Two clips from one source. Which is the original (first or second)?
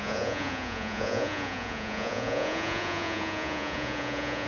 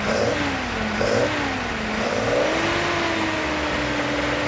second